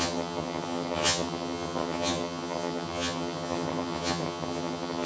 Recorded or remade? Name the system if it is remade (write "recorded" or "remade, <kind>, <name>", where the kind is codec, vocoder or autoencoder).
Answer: remade, vocoder, HiFi-GAN